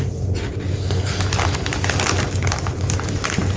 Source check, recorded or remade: recorded